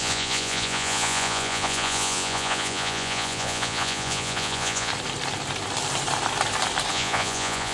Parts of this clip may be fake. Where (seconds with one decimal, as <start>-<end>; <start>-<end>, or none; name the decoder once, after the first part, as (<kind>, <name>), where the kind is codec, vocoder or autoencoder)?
0.0-4.9 (vocoder, Vocos); 6.9-7.7